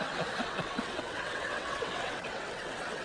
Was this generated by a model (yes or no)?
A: yes